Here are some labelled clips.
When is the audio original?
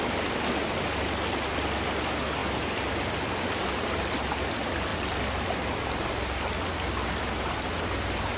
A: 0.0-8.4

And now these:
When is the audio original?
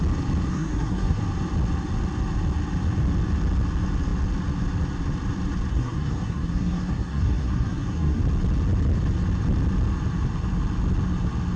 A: 0.0-0.5; 1.2-5.7; 8.2-11.6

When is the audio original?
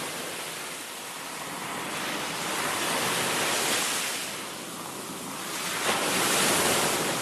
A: 0.0-7.2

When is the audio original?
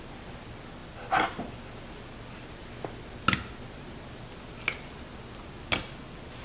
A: 0.0-6.4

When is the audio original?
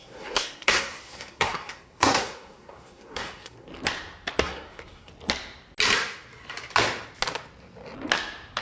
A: 3.7-4.4; 5.1-8.6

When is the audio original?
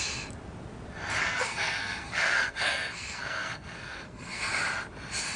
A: 0.0-1.2; 4.4-5.4